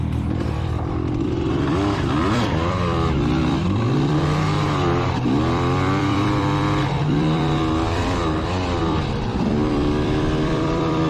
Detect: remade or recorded remade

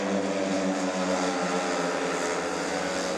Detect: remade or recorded recorded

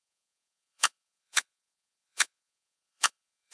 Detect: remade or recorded remade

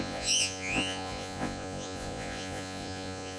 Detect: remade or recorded remade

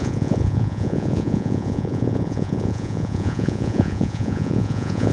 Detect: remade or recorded remade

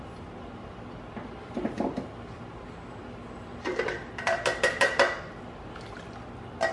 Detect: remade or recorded recorded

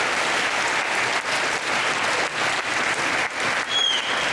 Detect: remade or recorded recorded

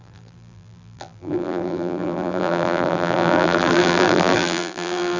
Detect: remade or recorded remade